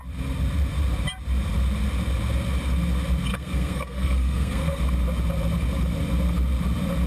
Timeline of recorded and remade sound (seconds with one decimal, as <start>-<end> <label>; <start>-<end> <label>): 0.0-3.3 recorded; 3.3-4.8 remade; 4.8-7.1 recorded